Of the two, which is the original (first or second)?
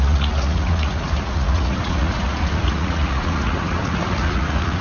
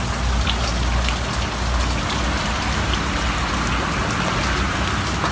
second